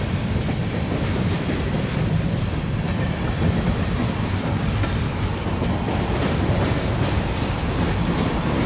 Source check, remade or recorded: remade